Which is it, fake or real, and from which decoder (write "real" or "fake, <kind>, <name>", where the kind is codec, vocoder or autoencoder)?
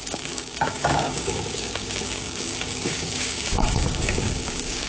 fake, codec, DAC